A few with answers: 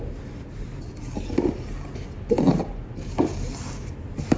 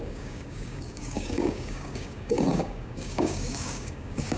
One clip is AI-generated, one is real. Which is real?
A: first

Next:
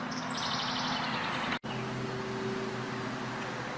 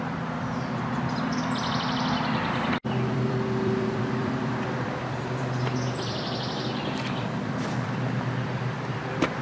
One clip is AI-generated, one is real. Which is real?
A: first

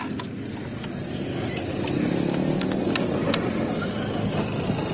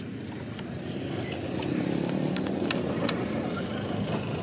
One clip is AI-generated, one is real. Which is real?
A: first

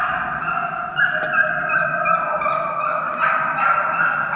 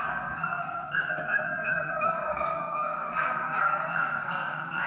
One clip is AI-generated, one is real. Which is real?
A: first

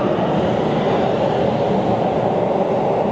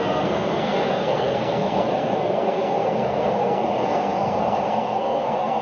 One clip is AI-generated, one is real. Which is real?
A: first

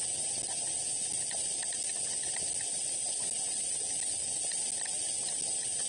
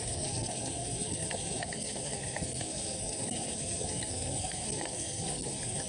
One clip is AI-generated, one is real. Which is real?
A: first